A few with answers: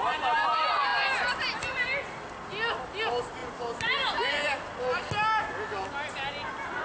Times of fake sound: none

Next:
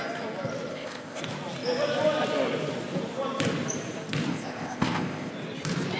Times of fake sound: 0.7-1.2 (codec, ZipCodec); 4.3-5.3

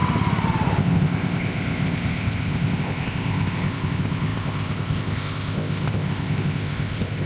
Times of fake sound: 0.8-7.3 (codec, ZipCodec)

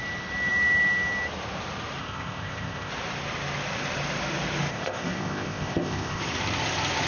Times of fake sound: 2.0-2.9 (codec, ZipCodec); 4.7-6.2

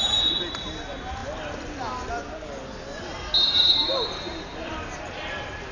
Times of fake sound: none